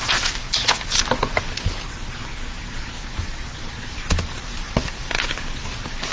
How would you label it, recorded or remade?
recorded